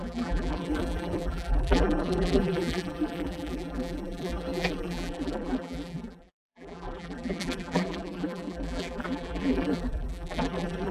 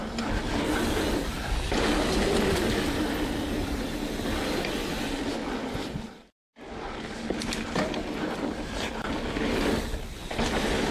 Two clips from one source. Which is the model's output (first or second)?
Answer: first